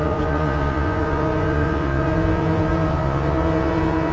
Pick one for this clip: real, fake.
fake